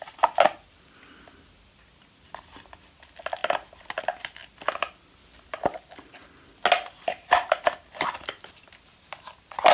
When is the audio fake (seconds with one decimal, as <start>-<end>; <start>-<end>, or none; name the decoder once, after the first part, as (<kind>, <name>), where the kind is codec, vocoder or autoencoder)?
none